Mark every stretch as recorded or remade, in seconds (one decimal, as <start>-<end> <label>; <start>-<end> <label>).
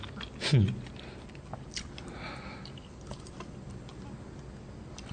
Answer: 0.0-5.1 recorded